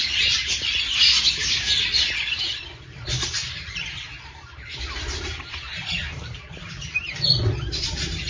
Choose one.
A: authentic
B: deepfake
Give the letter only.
B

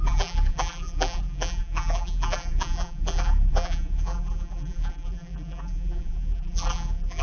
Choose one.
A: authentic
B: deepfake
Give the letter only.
B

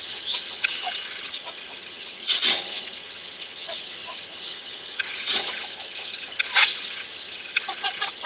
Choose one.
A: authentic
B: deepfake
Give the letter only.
B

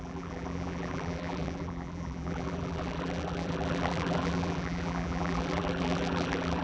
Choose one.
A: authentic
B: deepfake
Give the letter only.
B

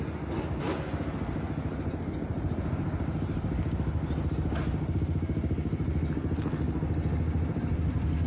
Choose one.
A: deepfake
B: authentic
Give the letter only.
B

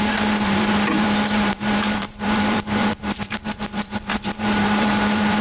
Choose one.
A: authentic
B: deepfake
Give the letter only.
B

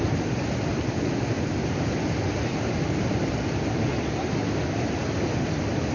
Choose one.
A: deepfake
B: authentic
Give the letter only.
B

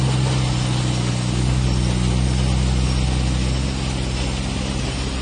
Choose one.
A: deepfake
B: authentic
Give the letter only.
B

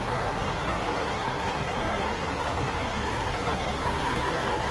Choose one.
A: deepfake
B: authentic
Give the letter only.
A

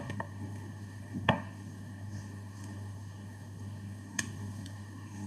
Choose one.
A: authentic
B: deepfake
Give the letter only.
B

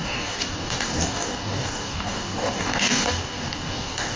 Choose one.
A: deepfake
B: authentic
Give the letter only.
A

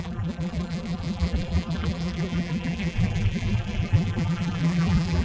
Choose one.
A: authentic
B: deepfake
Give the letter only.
B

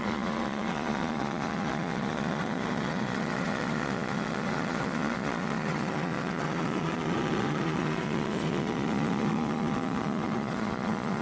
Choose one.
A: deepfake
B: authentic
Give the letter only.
A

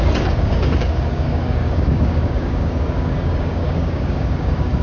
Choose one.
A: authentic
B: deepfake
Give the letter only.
B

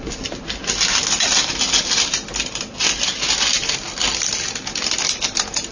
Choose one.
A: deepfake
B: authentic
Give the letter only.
B